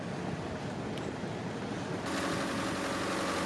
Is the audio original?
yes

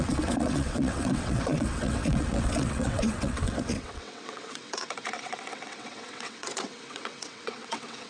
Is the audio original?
no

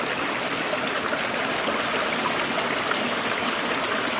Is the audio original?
yes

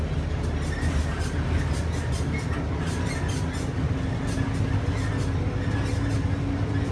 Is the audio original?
yes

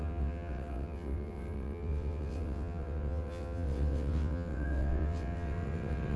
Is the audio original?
no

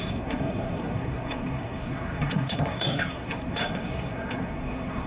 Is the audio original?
no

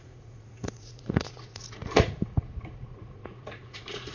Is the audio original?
no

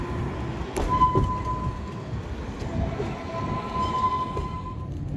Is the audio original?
yes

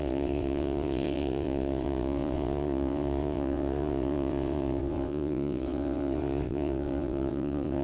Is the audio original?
no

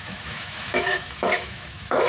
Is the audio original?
no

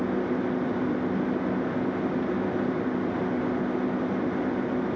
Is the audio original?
yes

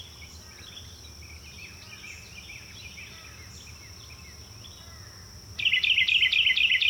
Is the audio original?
yes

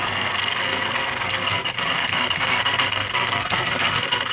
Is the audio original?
no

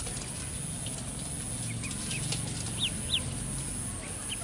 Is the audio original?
yes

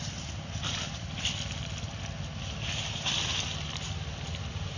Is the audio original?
yes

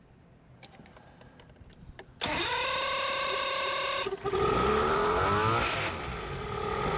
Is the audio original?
yes